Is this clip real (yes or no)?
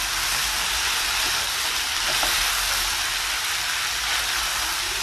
yes